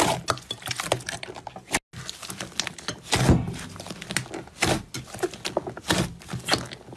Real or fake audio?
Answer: real